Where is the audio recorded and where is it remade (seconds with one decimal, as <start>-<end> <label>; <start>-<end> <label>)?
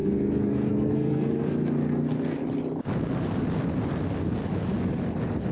0.0-2.4 remade; 2.4-5.5 recorded